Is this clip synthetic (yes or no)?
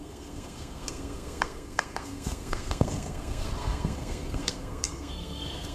yes